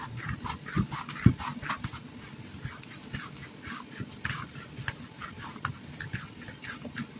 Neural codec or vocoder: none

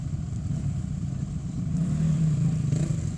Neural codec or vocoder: none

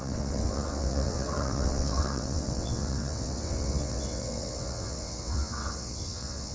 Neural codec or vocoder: vocoder, WaveNeXt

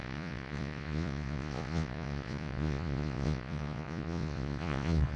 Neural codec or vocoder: vocoder, Vocos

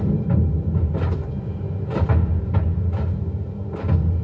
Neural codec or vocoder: none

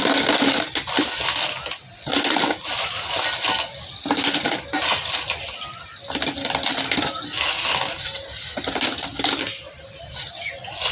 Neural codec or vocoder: none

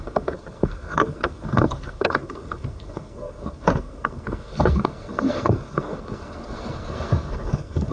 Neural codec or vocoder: codec, SNAC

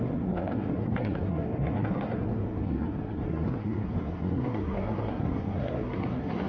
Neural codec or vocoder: codec, SNAC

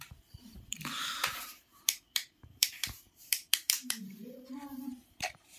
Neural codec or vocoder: vocoder, BigVGAN v2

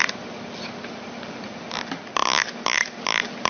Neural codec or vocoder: none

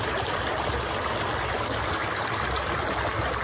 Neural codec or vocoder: none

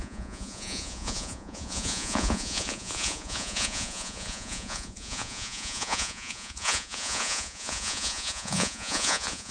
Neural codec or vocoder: vocoder, Vocos